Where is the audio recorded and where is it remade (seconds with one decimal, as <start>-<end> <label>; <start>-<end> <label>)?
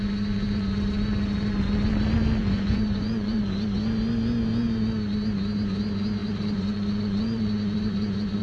0.0-2.4 recorded; 2.4-3.4 remade; 3.4-6.2 recorded; 6.2-8.4 remade